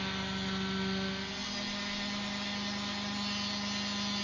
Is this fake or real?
real